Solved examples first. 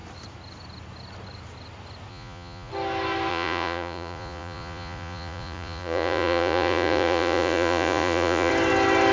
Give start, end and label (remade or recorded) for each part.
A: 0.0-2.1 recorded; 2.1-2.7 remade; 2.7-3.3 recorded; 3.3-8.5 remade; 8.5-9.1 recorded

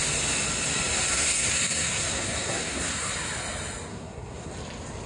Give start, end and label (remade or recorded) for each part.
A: 0.0-1.1 recorded; 1.1-3.1 remade; 3.1-3.9 recorded; 3.9-4.5 remade; 4.5-5.1 recorded

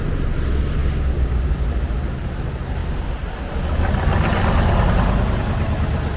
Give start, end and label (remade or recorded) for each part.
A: 0.0-0.8 recorded; 0.8-1.5 remade; 1.5-6.2 recorded

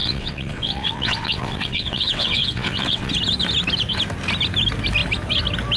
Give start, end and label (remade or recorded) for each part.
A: 0.0-3.1 remade; 3.1-5.8 recorded